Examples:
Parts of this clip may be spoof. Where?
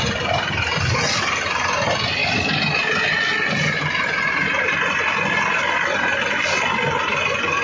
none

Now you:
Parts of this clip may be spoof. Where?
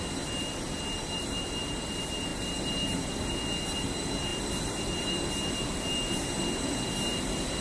0.0-7.6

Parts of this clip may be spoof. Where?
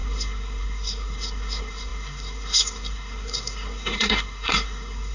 0.0-5.1